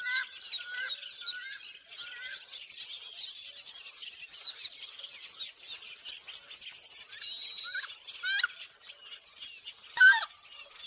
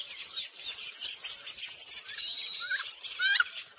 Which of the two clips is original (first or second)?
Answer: first